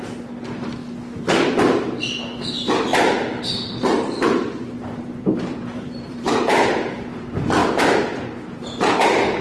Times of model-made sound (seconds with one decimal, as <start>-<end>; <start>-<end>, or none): 2.9-7.1

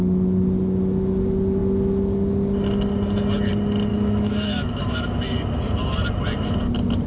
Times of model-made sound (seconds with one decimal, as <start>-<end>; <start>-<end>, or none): 3.9-5.2

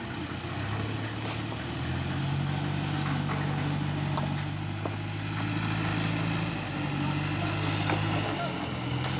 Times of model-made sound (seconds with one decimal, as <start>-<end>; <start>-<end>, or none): none

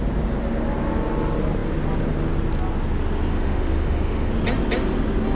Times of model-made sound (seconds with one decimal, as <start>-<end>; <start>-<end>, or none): 3.3-4.3